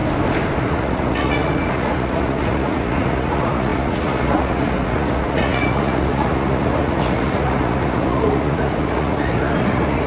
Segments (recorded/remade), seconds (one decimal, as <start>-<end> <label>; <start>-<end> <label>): 0.0-0.6 recorded; 0.6-10.1 remade